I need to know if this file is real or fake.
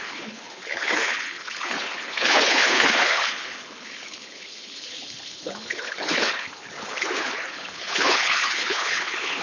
fake